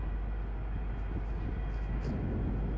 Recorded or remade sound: recorded